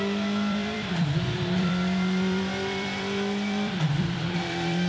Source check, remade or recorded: remade